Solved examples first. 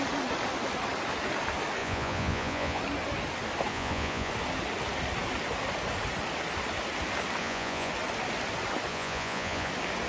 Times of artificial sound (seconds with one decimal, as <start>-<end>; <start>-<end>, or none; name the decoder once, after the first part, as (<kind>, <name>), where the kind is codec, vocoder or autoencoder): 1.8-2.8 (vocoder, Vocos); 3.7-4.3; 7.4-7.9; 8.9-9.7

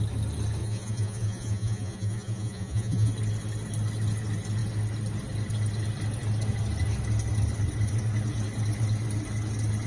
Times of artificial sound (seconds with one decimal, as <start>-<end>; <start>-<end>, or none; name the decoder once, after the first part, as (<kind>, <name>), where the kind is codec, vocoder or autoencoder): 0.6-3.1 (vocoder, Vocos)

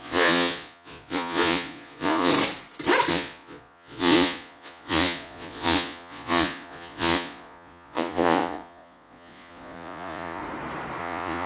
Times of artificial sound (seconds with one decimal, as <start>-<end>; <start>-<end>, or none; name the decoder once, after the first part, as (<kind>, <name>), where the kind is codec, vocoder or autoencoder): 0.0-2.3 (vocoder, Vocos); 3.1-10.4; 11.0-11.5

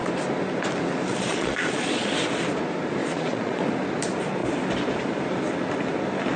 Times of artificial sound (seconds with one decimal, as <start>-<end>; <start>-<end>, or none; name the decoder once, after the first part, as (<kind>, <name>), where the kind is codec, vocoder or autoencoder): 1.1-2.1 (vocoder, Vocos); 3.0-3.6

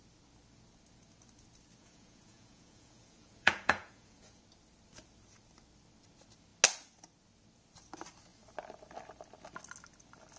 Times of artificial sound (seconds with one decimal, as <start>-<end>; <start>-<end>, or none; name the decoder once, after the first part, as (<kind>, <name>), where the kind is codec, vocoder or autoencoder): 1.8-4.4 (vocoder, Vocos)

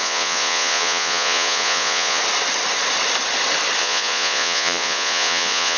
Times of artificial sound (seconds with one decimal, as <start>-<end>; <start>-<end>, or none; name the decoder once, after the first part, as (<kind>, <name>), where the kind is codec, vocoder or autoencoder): 0.0-2.2 (vocoder, Vocos); 3.8-5.8

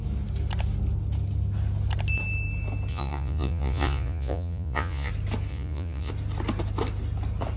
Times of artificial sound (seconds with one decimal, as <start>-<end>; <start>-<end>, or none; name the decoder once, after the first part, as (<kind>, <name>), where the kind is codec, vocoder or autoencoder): 2.9-5.1 (vocoder, Vocos); 5.5-6.1

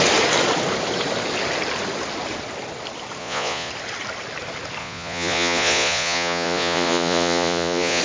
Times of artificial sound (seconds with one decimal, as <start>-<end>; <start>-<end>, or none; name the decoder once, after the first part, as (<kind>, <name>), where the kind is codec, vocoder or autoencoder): 3.2-3.7 (vocoder, Vocos); 4.8-8.0